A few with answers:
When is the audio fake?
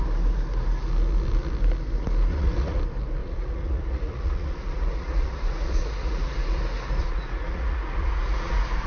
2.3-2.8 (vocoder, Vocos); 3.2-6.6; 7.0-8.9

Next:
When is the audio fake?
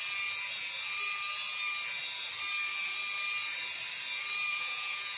4.5-5.2 (vocoder, Vocos)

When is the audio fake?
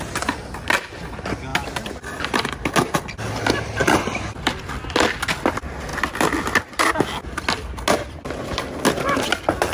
none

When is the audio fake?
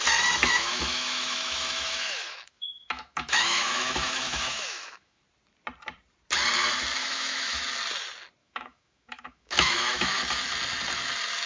0.4-5.2 (autoencoder, DAC-VAE); 7.0-7.6; 8.4-10.2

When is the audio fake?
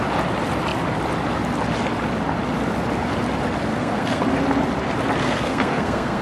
3.7-4.2 (codec, SNAC); 5.2-6.2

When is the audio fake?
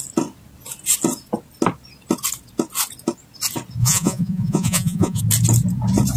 3.8-5.2 (vocoder, Vocos)